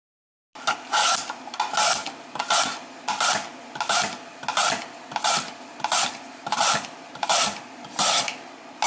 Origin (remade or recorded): recorded